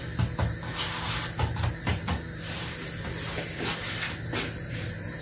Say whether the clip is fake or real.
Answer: real